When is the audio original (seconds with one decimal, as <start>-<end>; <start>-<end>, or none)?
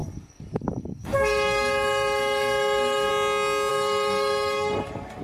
3.1-3.7